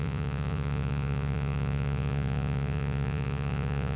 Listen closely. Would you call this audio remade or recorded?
remade